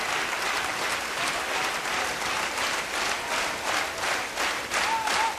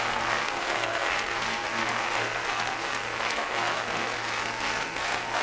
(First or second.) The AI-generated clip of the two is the second